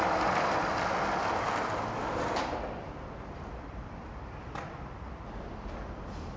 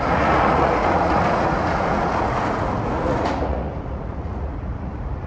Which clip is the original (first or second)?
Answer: first